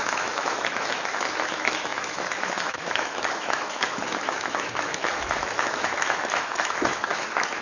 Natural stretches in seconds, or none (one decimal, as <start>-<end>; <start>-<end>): none